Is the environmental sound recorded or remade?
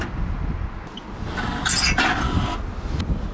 recorded